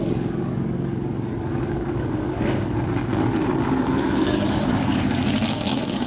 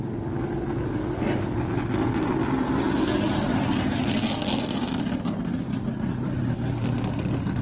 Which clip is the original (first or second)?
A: second